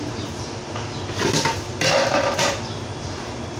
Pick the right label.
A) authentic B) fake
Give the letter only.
B